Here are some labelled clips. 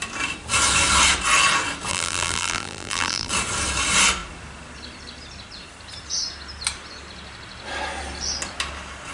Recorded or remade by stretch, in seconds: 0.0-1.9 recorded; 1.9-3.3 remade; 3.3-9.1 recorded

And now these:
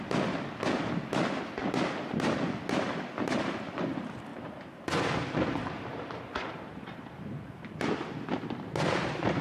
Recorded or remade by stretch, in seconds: 0.0-4.3 recorded; 4.3-4.8 remade; 4.8-5.6 recorded; 5.6-7.3 remade; 7.3-9.4 recorded

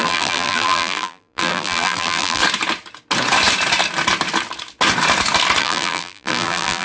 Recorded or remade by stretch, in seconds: 0.0-2.4 remade; 2.4-5.6 recorded; 5.6-6.8 remade

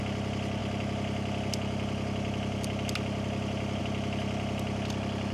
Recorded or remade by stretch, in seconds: 0.0-5.3 recorded

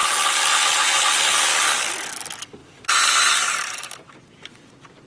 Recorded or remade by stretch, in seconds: 0.0-2.6 recorded; 2.6-4.6 remade; 4.6-5.1 recorded